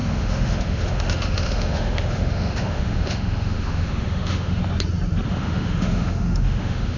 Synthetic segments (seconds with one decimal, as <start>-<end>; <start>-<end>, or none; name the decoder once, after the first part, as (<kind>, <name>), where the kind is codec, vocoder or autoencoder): 0.0-4.6 (autoencoder, DAC-VAE); 5.3-7.0